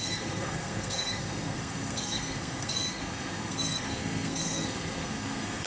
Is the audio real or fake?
fake